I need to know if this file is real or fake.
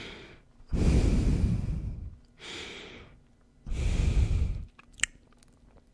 real